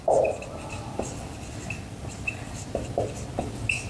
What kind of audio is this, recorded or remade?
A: recorded